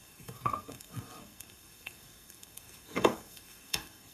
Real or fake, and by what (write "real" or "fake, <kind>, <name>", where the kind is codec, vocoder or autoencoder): fake, codec, SNAC